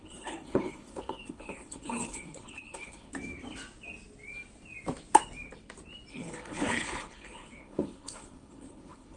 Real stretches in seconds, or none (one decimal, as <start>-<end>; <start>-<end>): 3.1-6.1